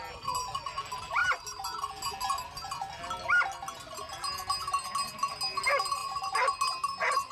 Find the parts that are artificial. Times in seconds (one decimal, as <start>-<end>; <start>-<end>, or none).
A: none